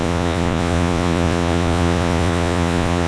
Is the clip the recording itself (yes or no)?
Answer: no